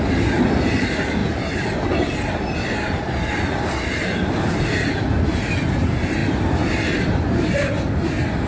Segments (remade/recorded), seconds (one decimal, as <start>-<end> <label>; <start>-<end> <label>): 0.0-8.5 recorded